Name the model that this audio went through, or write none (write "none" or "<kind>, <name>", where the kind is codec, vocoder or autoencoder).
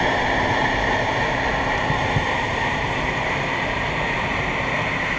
vocoder, BigVGAN v2